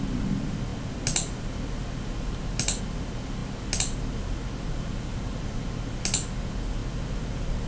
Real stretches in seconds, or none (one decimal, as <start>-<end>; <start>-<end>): 0.0-7.7